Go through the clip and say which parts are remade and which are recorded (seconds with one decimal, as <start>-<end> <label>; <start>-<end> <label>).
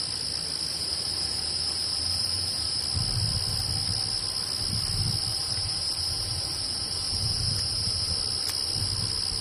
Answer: 0.0-0.7 recorded; 0.7-2.8 remade; 2.8-5.3 recorded; 5.3-8.1 remade; 8.1-9.4 recorded